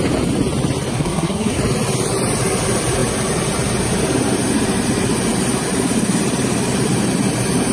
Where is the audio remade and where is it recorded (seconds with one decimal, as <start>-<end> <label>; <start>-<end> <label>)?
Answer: 0.0-0.9 recorded; 0.9-1.6 remade; 1.6-7.7 recorded